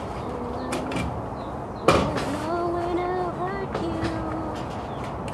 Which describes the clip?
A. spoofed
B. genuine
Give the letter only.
B